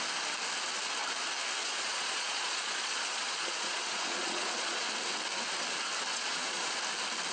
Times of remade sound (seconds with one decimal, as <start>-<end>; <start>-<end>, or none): 1.6-4.9; 6.1-6.8